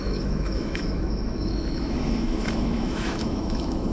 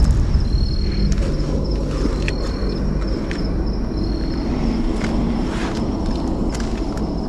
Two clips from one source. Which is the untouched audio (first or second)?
second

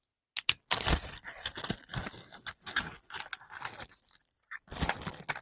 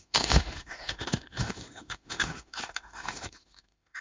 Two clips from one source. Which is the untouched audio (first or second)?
first